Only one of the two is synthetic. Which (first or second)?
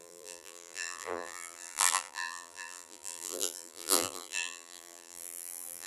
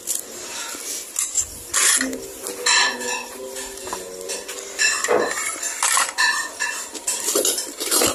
first